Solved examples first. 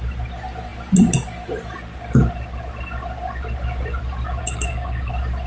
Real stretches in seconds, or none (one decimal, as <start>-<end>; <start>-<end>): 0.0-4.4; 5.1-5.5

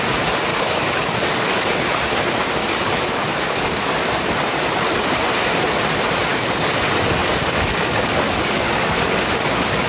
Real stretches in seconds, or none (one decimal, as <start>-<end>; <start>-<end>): 0.0-0.5; 1.7-2.6; 3.9-6.3; 6.8-7.2

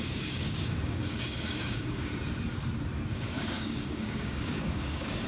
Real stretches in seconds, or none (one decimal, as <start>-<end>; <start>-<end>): 2.1-3.1

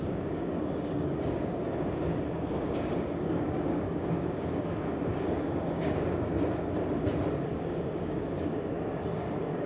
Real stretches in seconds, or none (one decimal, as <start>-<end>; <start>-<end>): 6.3-7.5

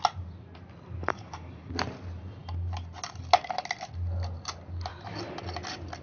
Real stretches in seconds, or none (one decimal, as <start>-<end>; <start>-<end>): 0.0-1.1; 1.7-6.0